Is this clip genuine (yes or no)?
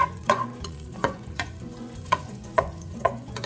no